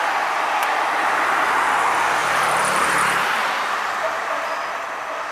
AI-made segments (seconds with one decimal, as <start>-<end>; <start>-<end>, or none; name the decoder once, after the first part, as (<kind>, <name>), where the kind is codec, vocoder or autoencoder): 2.2-4.4 (vocoder, BigVGAN v2)

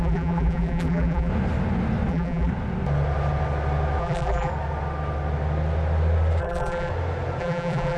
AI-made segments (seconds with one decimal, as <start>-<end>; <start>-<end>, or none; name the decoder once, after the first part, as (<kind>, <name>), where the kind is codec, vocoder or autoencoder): 0.0-1.3 (vocoder, BigVGAN v2); 2.1-2.5; 4.0-4.5; 6.4-6.9; 7.4-8.0